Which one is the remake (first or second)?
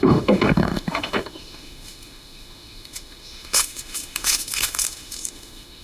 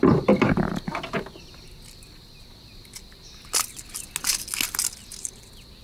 first